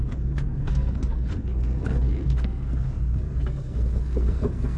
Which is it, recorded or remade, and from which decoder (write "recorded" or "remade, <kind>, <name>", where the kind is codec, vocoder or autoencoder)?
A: remade, codec, SNAC